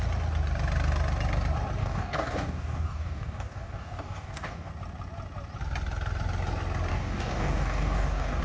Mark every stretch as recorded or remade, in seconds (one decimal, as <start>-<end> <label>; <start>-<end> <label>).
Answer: 0.0-1.8 recorded; 1.8-4.7 remade; 4.7-6.9 recorded; 6.9-8.4 remade